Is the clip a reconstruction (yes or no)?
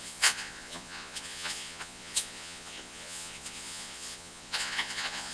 yes